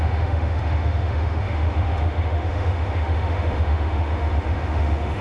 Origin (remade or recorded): remade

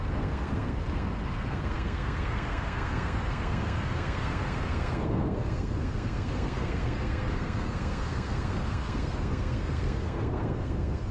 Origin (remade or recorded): remade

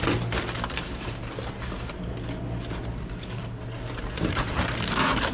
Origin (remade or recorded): recorded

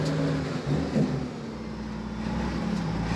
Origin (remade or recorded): recorded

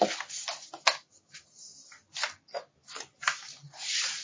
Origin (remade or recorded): recorded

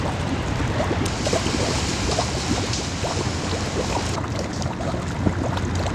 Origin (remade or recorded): recorded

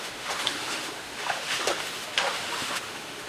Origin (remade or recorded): remade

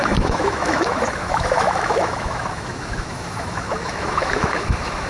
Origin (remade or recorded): remade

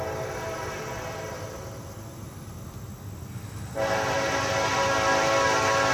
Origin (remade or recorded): recorded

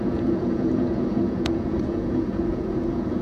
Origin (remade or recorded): remade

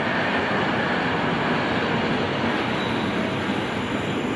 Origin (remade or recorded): recorded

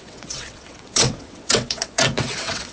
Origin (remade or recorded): remade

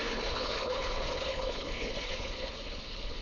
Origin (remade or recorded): remade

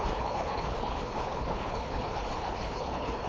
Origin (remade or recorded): remade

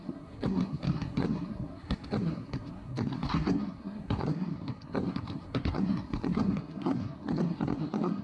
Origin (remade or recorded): remade